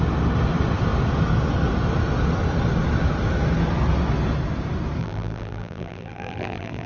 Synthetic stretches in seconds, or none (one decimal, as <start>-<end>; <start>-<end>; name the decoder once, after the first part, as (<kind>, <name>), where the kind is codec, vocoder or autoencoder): 5.0-6.9 (vocoder, BigVGAN v2)